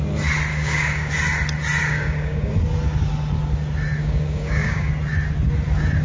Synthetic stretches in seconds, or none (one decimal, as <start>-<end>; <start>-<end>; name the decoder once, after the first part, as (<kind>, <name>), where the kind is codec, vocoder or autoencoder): 0.5-1.1 (codec, DAC); 1.8-2.5; 4.0-4.9